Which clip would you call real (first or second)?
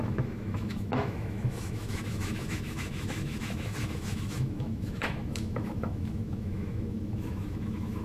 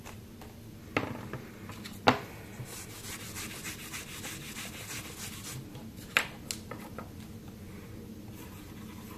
second